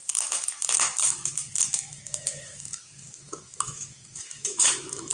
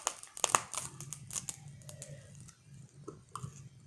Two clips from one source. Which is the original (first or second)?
second